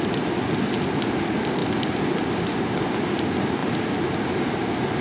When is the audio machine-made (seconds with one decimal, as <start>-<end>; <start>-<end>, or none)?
1.6-2.2